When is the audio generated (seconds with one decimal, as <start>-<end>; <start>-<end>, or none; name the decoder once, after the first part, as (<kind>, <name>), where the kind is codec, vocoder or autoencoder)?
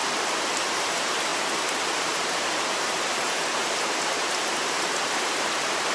0.7-5.9 (vocoder, BigVGAN v2)